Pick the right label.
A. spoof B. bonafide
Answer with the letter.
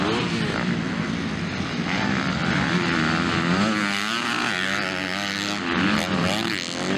B